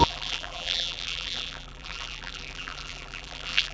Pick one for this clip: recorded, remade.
remade